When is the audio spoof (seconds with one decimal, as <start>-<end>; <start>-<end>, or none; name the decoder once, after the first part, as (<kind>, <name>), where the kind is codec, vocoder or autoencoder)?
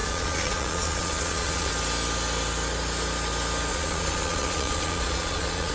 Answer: 0.0-1.7 (vocoder, Vocos); 3.7-5.7